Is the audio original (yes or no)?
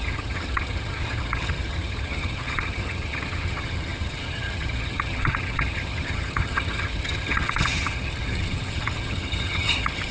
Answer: no